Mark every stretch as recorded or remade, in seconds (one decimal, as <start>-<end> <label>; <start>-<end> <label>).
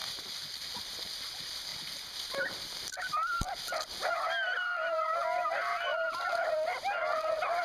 0.0-0.8 remade; 0.8-1.7 recorded; 1.7-4.1 remade; 4.1-5.9 recorded; 5.9-6.5 remade; 6.5-7.6 recorded